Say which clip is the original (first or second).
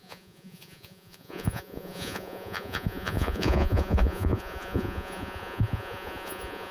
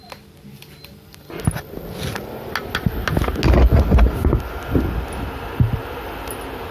second